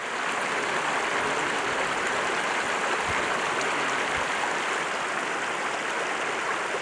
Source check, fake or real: real